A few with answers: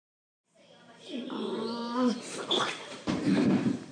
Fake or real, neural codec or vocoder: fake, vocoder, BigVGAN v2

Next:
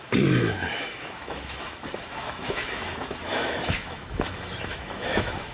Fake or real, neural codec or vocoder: fake, autoencoder, DAC-VAE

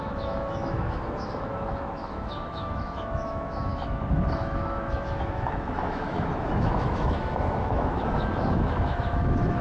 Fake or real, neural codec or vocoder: fake, autoencoder, DAC-VAE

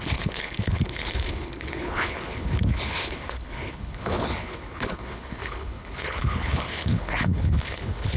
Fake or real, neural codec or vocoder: fake, codec, HILCodec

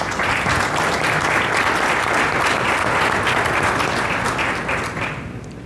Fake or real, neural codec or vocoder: real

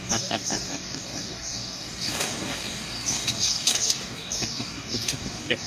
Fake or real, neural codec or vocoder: fake, codec, DAC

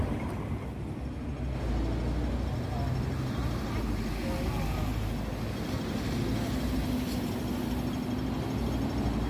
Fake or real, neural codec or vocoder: real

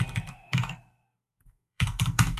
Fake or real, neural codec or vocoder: fake, codec, SNAC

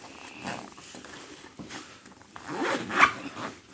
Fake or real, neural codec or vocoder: real